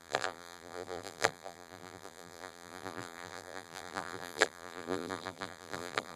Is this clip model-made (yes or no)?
yes